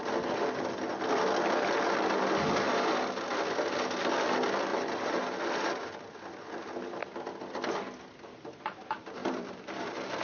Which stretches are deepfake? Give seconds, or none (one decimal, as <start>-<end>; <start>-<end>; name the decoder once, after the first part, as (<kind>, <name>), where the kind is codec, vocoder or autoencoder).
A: 4.7-5.4 (vocoder, BigVGAN v2); 9.2-10.2